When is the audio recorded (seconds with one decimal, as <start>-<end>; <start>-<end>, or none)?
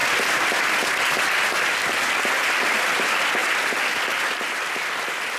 0.0-5.4